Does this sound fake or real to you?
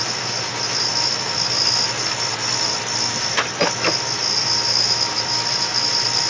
real